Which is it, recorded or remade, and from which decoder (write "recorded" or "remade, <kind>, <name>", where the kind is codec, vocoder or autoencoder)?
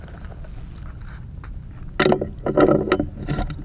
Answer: recorded